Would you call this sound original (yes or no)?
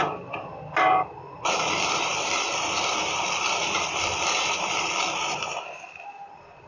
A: yes